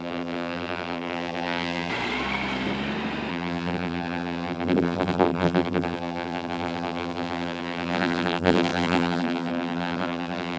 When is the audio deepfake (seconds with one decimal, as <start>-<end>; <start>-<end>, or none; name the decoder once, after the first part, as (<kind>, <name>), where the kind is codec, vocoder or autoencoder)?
0.0-1.9 (vocoder, BigVGAN v2); 3.3-10.6